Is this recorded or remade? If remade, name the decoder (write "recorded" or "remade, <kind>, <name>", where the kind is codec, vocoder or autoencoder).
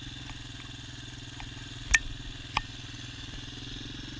recorded